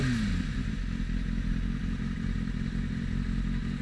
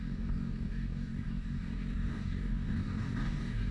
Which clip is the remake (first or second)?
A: second